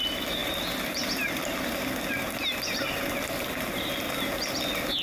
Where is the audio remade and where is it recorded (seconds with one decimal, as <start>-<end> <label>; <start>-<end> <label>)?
0.0-5.0 recorded